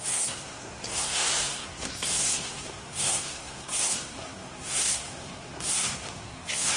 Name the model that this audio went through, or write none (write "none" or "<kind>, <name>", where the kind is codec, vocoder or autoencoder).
codec, SNAC